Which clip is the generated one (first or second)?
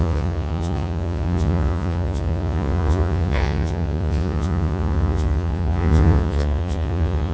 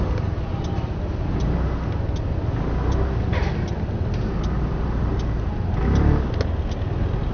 first